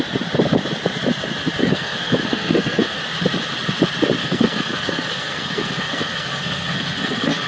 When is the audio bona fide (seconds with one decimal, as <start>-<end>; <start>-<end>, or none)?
0.0-1.6; 3.0-4.2